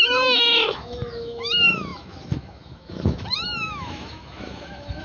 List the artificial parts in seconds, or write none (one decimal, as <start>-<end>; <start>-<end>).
0.0-5.0